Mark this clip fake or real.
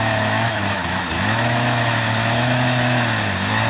fake